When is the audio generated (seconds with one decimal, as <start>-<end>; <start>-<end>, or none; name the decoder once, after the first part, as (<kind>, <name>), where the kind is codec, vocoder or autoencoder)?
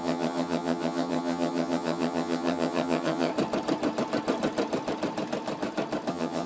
0.0-3.3 (vocoder, HiFi-GAN); 6.1-6.5